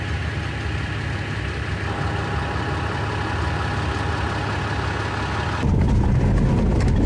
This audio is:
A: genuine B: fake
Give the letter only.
A